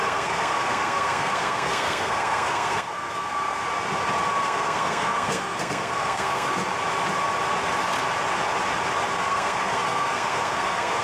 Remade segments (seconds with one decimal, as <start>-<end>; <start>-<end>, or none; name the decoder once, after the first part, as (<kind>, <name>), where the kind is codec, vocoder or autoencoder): 0.0-3.6 (codec, SNAC); 4.4-6.6; 9.2-11.0